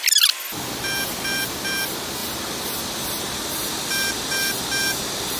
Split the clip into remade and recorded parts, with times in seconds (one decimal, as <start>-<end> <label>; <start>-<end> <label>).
0.0-5.4 recorded

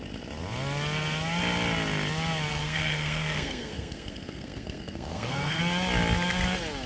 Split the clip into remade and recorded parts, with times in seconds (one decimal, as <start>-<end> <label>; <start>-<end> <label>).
0.0-2.5 recorded; 2.5-5.6 remade; 5.6-6.9 recorded

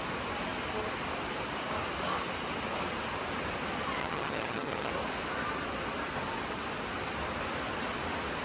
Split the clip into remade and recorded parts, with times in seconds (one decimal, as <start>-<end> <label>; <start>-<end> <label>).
0.0-4.0 recorded; 4.0-4.9 remade; 4.9-8.4 recorded

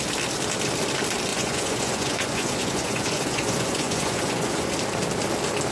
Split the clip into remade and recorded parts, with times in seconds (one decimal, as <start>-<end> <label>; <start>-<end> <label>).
0.0-1.3 recorded; 1.3-4.7 remade; 4.7-5.7 recorded

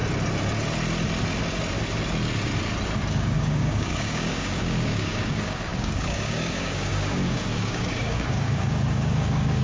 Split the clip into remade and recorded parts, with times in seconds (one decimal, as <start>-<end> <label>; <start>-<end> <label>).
0.0-3.1 recorded; 3.1-9.6 remade

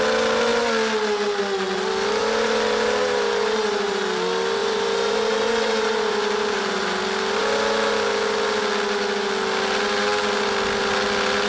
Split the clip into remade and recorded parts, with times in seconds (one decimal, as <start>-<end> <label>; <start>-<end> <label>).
0.0-2.2 recorded; 2.2-3.9 remade; 3.9-4.6 recorded; 4.6-7.0 remade; 7.0-11.5 recorded